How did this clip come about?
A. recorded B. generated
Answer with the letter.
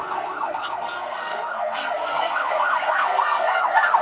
B